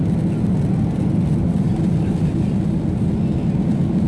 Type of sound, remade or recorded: recorded